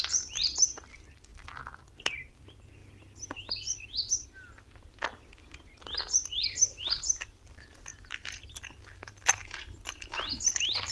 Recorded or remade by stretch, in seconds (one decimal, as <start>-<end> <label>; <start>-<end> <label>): 0.0-2.8 recorded; 2.8-4.1 remade; 4.1-7.9 recorded; 7.9-8.5 remade; 8.5-9.0 recorded; 9.0-10.4 remade; 10.4-10.9 recorded